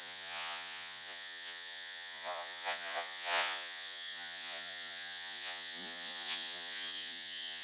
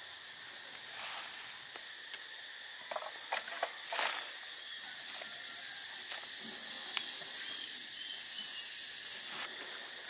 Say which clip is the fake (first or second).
first